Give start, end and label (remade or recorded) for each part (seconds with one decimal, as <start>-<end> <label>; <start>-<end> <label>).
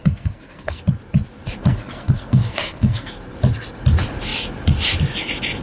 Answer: 0.0-0.8 remade; 0.8-1.6 recorded; 1.6-3.1 remade; 3.1-5.6 recorded